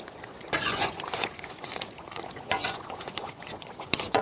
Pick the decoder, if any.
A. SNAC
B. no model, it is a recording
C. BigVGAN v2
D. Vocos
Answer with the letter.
D